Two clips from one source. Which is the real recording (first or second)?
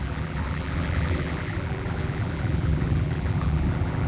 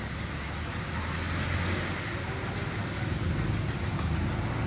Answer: second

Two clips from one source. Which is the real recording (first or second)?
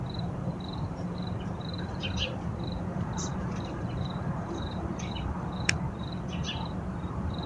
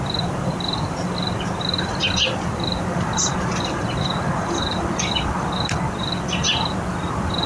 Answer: second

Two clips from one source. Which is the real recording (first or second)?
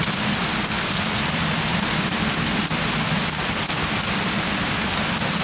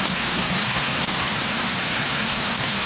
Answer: first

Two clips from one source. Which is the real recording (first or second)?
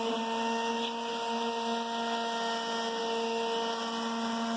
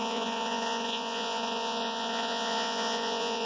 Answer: first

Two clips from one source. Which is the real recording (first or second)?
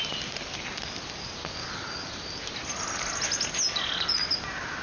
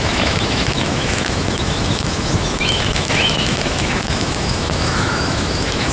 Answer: first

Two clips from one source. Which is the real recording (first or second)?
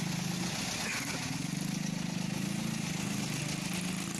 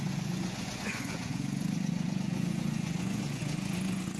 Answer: first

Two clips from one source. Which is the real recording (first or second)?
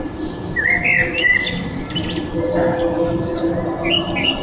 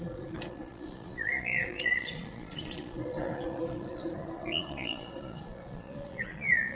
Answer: first